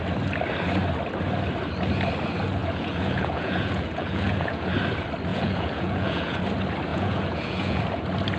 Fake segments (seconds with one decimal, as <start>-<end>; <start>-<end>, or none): 2.6-4.7; 5.3-6.4; 6.9-7.8